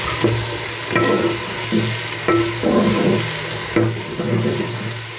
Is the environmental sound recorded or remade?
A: recorded